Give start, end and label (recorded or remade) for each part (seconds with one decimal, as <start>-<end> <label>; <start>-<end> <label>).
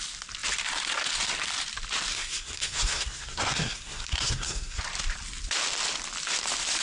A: 0.0-2.1 recorded; 2.1-4.8 remade; 4.8-6.8 recorded